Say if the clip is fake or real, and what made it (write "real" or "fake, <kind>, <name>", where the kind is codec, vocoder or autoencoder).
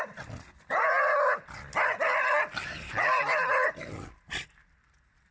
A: real